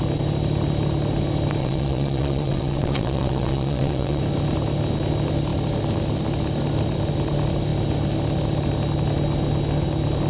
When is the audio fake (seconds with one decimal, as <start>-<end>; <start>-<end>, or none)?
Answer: 1.6-4.2

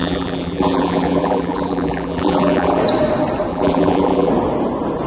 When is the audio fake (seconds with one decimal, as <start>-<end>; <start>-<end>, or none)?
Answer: 0.0-2.8; 3.5-4.3